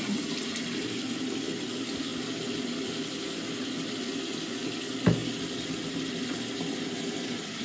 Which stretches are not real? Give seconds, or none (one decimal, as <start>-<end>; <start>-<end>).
none